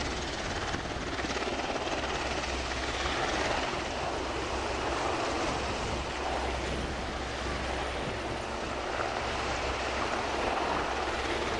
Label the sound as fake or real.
real